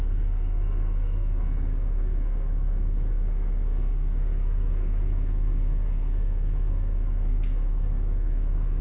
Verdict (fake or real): fake